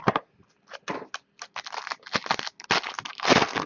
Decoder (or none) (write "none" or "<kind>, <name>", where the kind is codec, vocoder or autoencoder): none